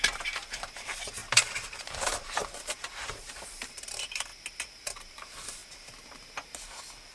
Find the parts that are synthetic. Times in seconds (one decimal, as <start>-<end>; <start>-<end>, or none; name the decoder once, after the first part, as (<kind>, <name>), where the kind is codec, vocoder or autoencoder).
0.0-4.3 (vocoder, BigVGAN v2); 5.1-5.6